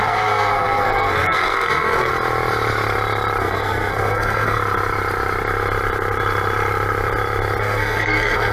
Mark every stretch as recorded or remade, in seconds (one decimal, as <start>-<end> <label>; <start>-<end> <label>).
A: 0.0-2.1 remade; 2.1-3.4 recorded; 3.4-4.6 remade; 4.6-7.6 recorded; 7.6-8.5 remade